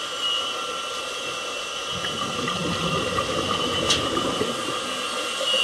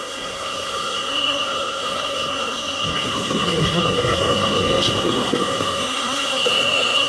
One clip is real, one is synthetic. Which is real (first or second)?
first